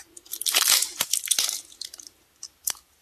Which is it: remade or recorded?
recorded